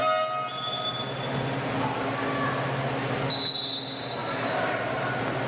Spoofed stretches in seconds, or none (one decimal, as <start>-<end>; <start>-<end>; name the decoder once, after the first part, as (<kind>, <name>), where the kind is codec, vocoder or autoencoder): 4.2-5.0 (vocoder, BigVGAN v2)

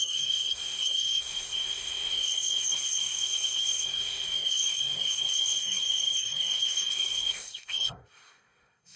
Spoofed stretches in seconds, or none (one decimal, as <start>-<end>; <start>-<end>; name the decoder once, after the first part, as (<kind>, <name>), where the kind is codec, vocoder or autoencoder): 0.0-9.0 (codec, SNAC)

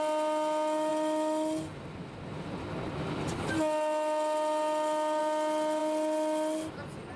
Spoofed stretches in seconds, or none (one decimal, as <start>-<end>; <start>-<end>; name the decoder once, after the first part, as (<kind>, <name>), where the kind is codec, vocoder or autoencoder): none